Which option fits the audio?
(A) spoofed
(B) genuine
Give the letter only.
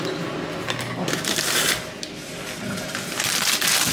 B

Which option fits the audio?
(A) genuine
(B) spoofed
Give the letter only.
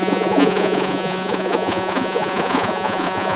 B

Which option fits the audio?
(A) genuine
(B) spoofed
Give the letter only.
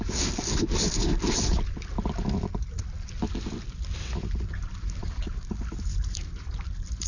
A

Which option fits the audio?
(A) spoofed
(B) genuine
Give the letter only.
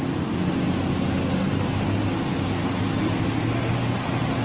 B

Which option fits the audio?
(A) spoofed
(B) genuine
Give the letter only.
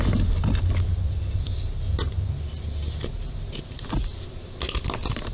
B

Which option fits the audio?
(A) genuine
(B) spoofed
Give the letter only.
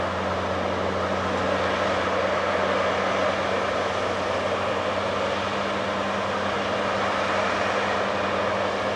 A